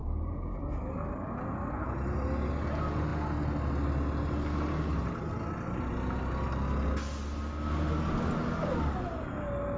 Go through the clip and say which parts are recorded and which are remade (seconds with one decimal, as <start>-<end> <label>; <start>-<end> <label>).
0.0-9.8 recorded